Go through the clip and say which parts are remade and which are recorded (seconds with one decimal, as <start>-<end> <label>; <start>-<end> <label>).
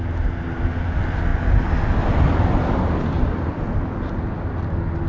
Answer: 0.0-5.1 recorded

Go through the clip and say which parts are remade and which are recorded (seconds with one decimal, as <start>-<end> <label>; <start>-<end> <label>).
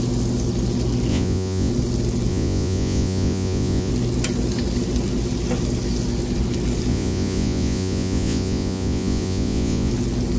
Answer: 0.0-1.1 recorded; 1.1-1.7 remade; 1.7-2.3 recorded; 2.3-3.9 remade; 3.9-6.9 recorded; 6.9-9.9 remade; 9.9-10.4 recorded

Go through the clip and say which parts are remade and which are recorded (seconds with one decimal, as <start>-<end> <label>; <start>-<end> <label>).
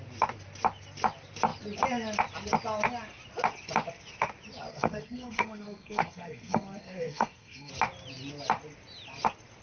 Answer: 0.0-4.7 recorded; 4.7-7.7 remade; 7.7-9.6 recorded